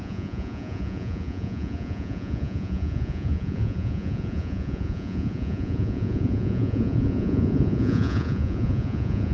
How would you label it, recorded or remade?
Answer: remade